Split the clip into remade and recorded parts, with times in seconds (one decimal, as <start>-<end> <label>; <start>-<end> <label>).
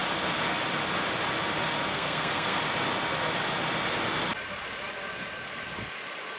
0.0-1.9 recorded; 1.9-2.6 remade; 2.6-6.4 recorded